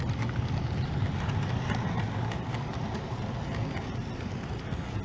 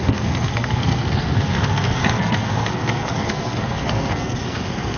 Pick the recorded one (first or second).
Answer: first